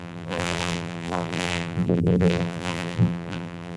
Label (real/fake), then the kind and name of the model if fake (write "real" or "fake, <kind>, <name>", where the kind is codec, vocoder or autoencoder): fake, vocoder, BigVGAN v2